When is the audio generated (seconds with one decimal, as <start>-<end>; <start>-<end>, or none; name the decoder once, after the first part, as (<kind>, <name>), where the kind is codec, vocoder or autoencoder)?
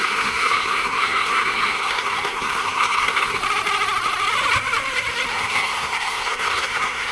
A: 0.0-3.4 (codec, SNAC); 5.3-7.1